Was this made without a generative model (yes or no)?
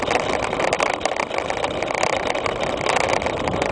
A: yes